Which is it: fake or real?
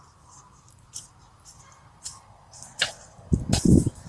fake